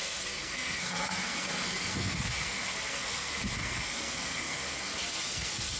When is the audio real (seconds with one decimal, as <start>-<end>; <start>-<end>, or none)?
none